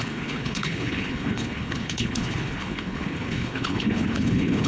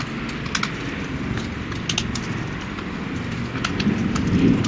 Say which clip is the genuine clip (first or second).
second